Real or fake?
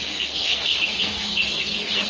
fake